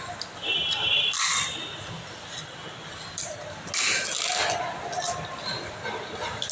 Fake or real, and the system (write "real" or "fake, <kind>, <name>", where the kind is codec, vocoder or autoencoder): real